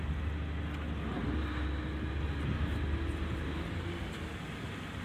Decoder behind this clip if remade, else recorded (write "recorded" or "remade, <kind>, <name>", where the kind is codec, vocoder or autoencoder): recorded